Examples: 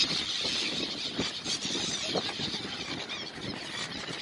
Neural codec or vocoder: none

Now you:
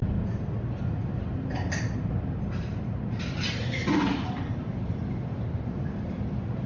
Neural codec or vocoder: none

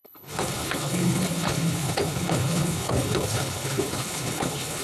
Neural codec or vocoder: codec, HILCodec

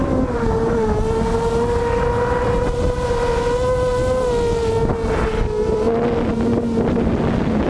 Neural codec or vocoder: none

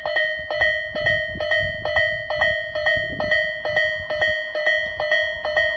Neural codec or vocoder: none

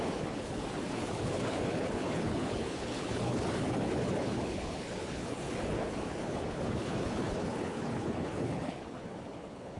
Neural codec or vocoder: codec, HILCodec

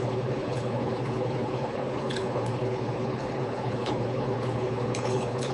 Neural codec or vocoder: codec, HILCodec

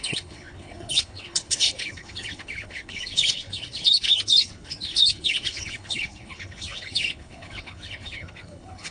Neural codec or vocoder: codec, HILCodec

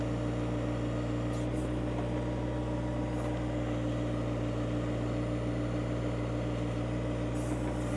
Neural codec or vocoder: none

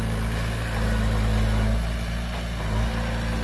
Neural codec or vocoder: none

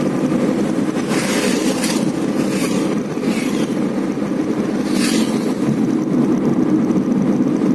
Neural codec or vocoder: none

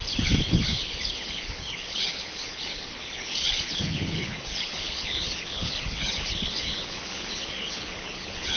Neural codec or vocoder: codec, HILCodec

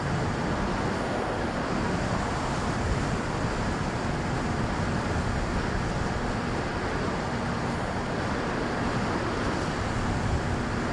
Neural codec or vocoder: none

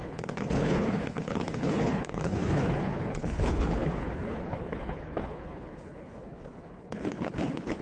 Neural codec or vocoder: codec, HILCodec